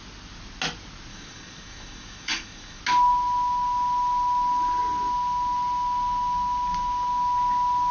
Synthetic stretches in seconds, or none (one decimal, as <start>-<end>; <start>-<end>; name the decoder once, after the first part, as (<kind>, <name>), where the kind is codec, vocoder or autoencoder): 1.1-2.8 (codec, DAC)